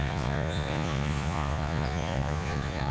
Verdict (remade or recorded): remade